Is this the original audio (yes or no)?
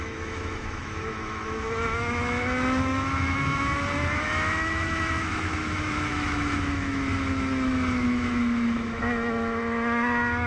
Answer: no